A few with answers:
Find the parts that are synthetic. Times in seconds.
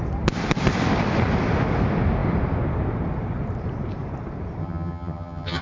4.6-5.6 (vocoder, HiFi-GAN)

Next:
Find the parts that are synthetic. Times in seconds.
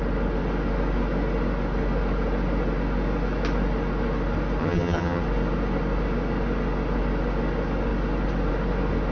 4.6-5.2 (vocoder, HiFi-GAN)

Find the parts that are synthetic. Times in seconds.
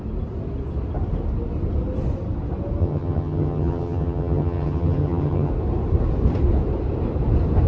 2.8-5.5 (vocoder, HiFi-GAN)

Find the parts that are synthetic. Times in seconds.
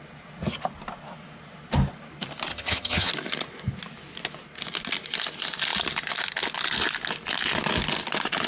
2.5-3.1 (vocoder, HiFi-GAN)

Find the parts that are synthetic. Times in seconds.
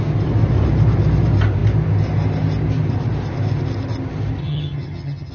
4.4-5.3 (vocoder, HiFi-GAN)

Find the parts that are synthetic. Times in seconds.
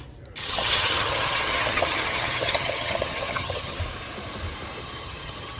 0.4-3.8 (vocoder, HiFi-GAN); 4.8-5.6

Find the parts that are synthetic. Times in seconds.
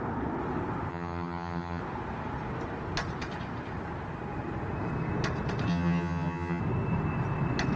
0.9-1.8 (vocoder, HiFi-GAN); 5.7-6.6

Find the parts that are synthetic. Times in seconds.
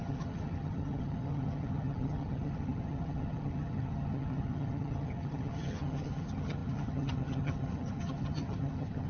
0.0-9.1 (vocoder, HiFi-GAN)